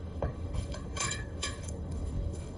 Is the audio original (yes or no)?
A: no